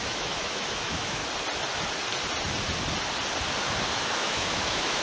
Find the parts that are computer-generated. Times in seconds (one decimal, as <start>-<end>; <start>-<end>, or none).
0.0-1.2; 3.9-5.0